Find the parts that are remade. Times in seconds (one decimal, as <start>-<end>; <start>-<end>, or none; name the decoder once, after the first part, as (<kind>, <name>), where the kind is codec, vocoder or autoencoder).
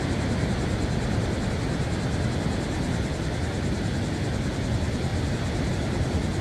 none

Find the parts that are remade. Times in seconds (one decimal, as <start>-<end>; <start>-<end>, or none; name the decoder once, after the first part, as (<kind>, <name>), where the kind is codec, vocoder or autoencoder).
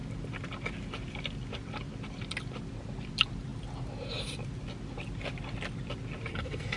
6.3-6.8 (codec, SNAC)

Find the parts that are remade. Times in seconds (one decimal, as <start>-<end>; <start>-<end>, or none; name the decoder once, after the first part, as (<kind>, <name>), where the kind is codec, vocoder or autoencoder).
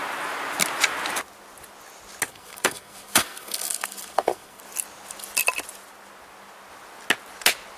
2.3-4.6 (codec, SNAC)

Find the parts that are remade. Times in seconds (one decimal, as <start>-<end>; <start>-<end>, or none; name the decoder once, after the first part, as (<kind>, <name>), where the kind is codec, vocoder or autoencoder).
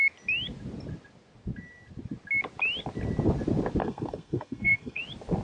3.8-5.0 (codec, SNAC)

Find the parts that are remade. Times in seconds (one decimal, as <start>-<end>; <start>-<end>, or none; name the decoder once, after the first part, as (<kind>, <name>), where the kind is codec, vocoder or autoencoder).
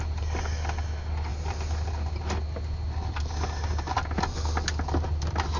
none